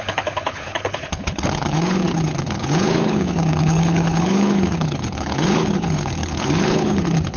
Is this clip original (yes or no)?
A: no